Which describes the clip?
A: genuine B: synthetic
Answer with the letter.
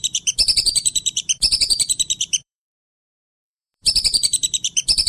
B